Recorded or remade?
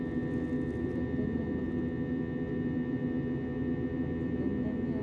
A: recorded